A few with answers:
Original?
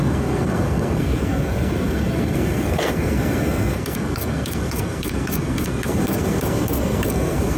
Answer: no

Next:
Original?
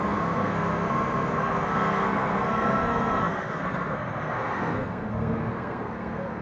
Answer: no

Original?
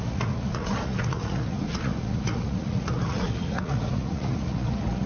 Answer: no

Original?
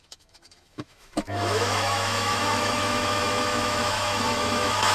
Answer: no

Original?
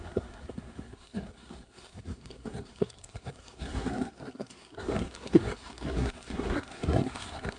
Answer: no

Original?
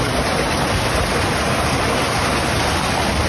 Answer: yes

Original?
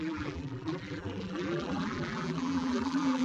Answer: no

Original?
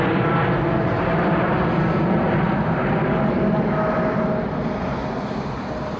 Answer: yes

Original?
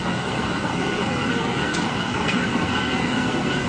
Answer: no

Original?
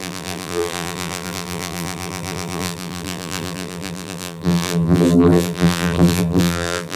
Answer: no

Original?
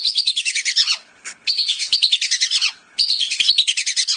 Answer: no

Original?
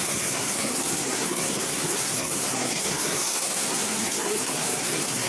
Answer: no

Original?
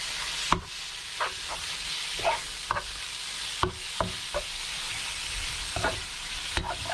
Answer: yes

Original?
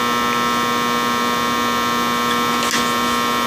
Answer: yes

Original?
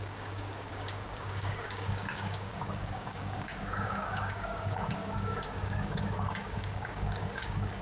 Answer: no